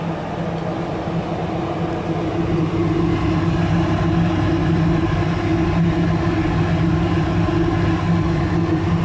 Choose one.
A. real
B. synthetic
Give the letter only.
A